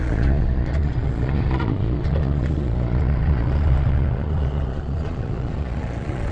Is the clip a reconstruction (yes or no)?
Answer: yes